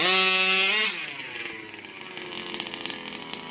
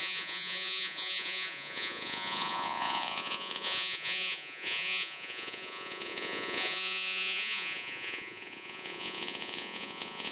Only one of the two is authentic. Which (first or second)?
first